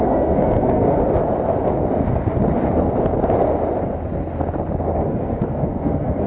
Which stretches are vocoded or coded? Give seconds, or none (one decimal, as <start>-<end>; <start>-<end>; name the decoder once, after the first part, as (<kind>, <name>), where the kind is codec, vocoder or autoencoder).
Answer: 0.0-1.0 (codec, SNAC); 4.8-6.3